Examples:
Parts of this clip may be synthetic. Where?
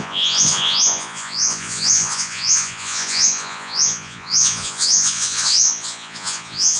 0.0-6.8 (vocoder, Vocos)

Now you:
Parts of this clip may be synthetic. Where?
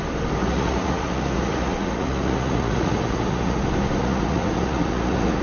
0.4-3.6 (vocoder, Vocos); 4.0-5.4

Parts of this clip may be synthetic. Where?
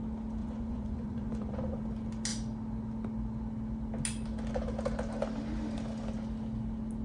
0.4-1.8 (vocoder, Vocos)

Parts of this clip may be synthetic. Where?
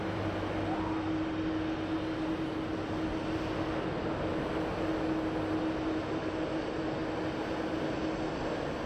none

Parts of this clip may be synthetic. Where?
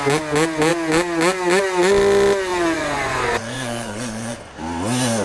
2.5-4.5 (vocoder, Vocos)